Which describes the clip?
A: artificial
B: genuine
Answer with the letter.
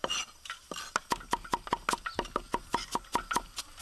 B